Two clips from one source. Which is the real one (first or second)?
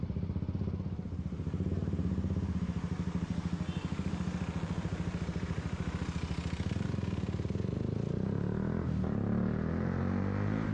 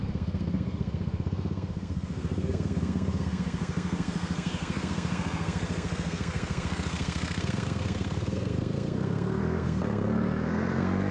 first